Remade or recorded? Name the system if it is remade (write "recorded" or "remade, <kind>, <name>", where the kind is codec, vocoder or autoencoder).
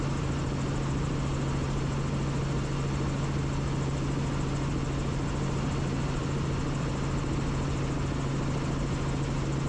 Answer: recorded